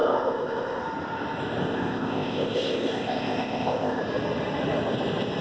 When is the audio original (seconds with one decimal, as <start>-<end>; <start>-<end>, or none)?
0.8-1.6; 4.0-5.4